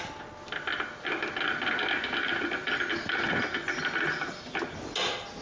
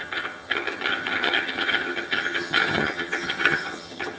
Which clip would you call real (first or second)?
first